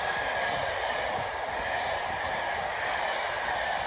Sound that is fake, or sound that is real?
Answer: real